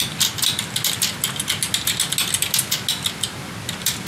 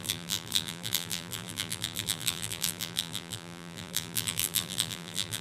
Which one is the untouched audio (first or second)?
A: first